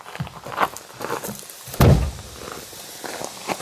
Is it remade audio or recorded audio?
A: recorded